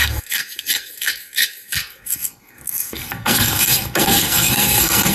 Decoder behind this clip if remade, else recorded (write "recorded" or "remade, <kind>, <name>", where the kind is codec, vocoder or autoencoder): remade, codec, SNAC